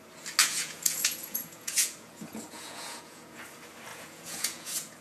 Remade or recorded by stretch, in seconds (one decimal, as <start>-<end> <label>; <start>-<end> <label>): 0.0-0.4 recorded; 0.4-3.4 remade; 3.4-3.9 recorded; 3.9-5.0 remade